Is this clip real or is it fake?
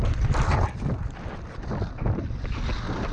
real